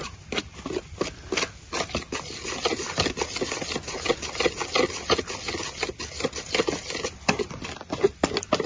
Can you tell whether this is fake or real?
real